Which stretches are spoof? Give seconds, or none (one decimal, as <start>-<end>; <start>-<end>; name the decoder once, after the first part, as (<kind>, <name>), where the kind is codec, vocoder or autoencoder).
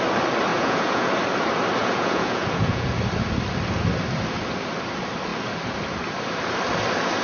0.5-1.1 (vocoder, Vocos); 1.8-3.0